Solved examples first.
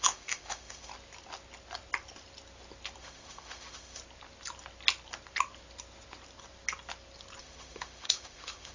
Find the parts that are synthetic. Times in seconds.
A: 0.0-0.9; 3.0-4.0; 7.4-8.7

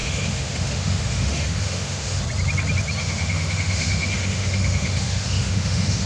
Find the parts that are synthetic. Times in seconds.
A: 0.0-2.2; 3.0-6.1

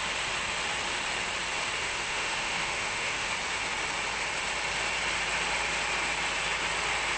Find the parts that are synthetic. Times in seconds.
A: 1.8-3.3

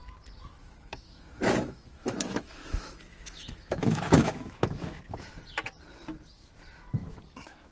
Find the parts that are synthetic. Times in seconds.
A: 0.6-5.0; 7.0-7.7